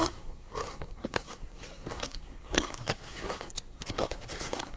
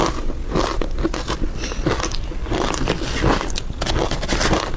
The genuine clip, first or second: second